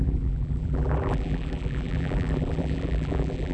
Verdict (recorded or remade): remade